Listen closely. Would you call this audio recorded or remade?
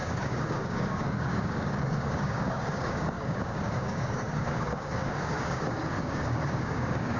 remade